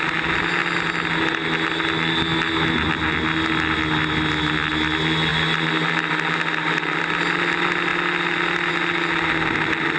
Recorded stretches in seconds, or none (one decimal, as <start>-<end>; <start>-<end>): 0.0-10.0